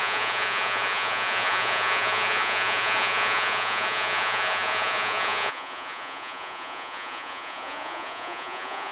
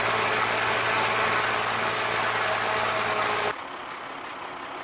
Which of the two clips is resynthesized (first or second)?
first